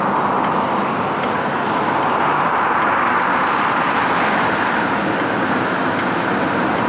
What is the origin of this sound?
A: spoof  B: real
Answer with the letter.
B